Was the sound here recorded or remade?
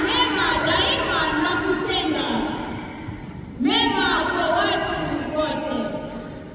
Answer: recorded